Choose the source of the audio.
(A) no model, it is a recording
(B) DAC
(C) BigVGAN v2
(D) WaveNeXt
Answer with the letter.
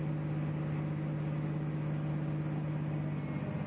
A